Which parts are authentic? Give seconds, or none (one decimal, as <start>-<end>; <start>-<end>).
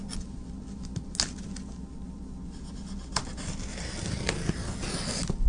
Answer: 0.0-5.5